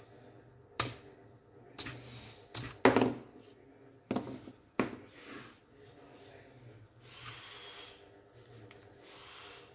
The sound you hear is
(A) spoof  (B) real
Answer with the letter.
B